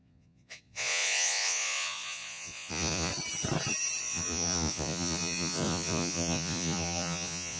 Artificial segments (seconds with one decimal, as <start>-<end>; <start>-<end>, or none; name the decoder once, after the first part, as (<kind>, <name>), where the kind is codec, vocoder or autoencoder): 0.0-3.1 (vocoder, Vocos); 4.0-7.6